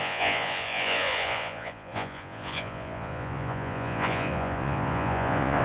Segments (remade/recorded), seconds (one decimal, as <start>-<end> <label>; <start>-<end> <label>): 0.0-5.6 remade